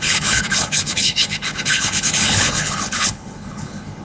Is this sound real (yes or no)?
no